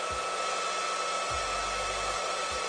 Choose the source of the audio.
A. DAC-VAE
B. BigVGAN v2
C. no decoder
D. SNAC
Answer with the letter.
C